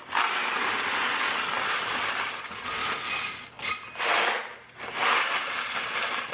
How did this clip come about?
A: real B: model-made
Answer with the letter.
A